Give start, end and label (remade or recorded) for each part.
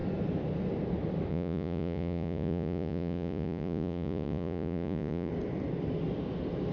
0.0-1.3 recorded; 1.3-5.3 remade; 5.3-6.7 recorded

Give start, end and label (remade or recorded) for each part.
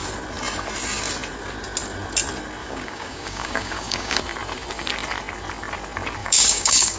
0.0-2.6 recorded; 2.6-4.2 remade; 4.2-6.2 recorded; 6.2-7.0 remade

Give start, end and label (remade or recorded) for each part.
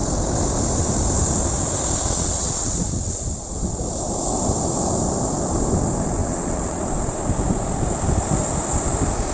0.0-2.0 recorded; 2.0-3.2 remade; 3.2-6.2 recorded; 6.2-6.8 remade; 6.8-9.3 recorded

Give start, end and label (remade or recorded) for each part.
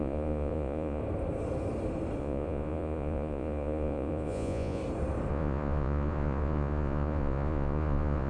0.0-1.0 remade; 1.0-2.2 recorded; 2.2-4.8 remade; 4.8-5.3 recorded; 5.3-8.3 remade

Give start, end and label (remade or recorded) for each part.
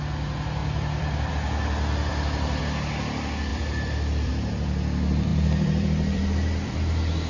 0.0-0.6 recorded; 0.6-1.3 remade; 1.3-3.5 recorded; 3.5-4.3 remade; 4.3-5.3 recorded; 5.3-6.8 remade; 6.8-7.3 recorded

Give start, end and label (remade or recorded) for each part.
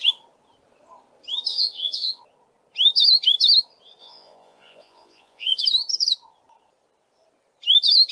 0.0-1.5 recorded; 1.5-2.2 remade; 2.2-4.0 recorded; 4.0-5.6 remade; 5.6-8.1 recorded